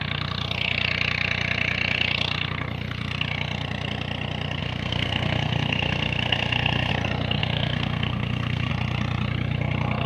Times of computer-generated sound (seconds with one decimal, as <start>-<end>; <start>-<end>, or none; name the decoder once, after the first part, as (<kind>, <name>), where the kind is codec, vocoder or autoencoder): 4.6-6.9 (codec, SNAC); 7.4-8.7